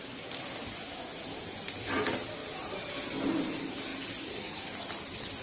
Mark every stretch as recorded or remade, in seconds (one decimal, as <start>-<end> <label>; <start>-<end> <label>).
0.0-5.4 recorded